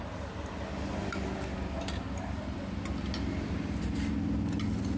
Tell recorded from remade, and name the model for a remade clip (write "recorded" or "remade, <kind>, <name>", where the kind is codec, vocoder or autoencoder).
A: recorded